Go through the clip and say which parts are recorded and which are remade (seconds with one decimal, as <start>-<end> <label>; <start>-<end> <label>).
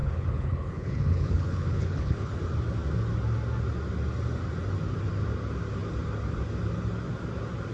0.0-2.4 remade; 2.4-7.7 recorded